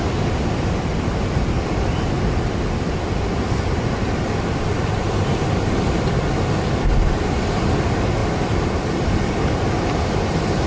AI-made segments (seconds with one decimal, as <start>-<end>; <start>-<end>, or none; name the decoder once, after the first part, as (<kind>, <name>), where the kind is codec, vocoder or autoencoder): 8.2-9.4 (vocoder, BigVGAN v2)